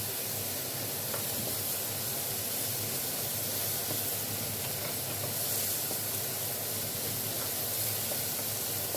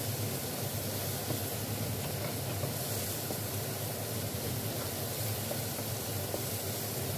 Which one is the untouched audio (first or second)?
first